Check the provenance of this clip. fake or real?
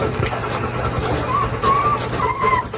real